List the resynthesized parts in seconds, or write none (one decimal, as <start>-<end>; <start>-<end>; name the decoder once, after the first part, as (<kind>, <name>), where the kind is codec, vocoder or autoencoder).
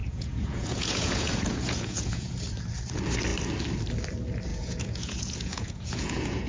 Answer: 0.0-2.4 (vocoder, Vocos); 4.5-6.5